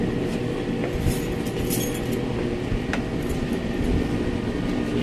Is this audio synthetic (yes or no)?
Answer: no